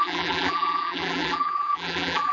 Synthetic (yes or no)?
yes